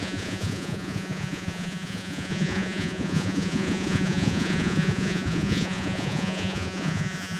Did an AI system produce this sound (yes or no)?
yes